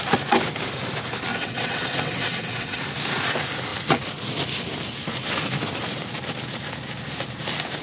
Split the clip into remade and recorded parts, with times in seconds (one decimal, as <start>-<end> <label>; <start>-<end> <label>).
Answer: 0.0-1.3 recorded; 1.3-2.8 remade; 2.8-7.8 recorded